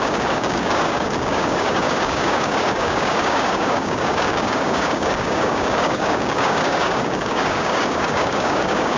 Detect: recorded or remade remade